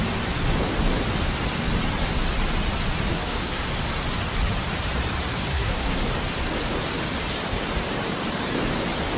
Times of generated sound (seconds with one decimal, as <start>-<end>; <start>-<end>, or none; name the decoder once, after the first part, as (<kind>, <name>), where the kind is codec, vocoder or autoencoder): 3.1-3.7 (codec, SNAC); 5.5-6.0